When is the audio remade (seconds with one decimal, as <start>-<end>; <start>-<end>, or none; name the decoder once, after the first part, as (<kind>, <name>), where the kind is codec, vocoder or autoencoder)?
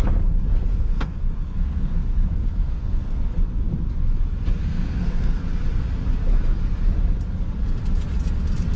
0.7-3.2 (codec, SNAC); 4.6-5.4